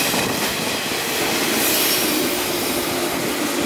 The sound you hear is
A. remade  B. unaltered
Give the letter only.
B